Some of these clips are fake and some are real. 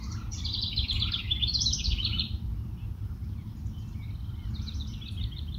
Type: fake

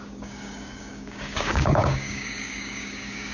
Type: fake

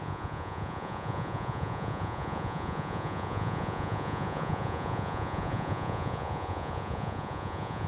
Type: fake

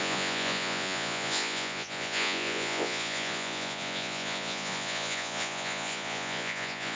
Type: fake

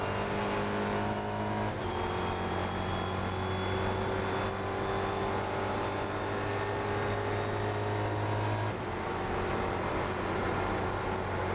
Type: real